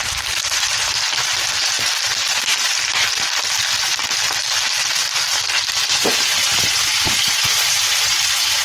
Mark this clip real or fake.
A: real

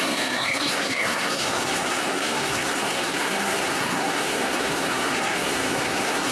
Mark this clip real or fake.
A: fake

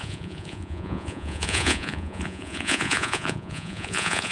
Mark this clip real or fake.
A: fake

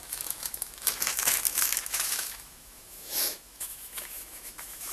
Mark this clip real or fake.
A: fake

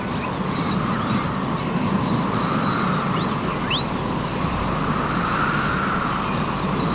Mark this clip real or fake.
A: real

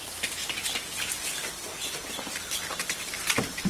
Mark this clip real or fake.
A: real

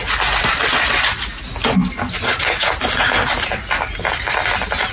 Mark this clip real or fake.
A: real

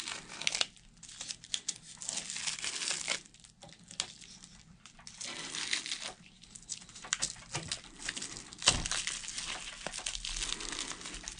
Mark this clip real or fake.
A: real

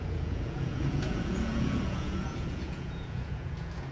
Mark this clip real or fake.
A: fake